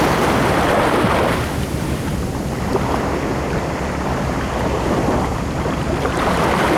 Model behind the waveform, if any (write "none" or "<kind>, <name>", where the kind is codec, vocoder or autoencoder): none